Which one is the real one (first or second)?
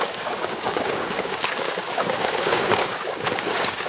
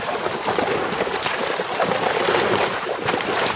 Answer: second